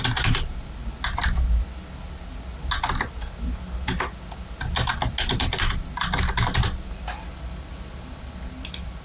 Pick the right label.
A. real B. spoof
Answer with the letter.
A